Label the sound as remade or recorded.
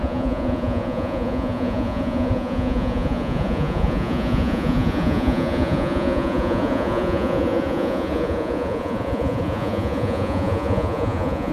remade